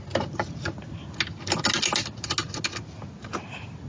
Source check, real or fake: real